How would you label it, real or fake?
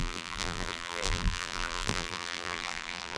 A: fake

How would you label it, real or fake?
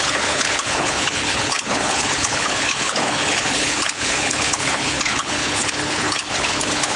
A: fake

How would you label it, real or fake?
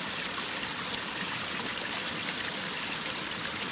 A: fake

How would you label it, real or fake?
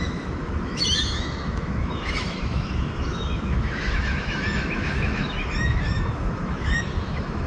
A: fake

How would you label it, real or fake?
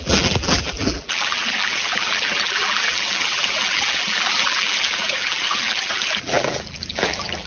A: fake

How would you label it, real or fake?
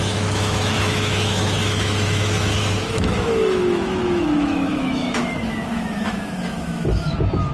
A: fake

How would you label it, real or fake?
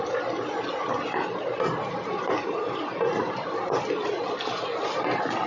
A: real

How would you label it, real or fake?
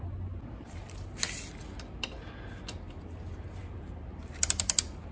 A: real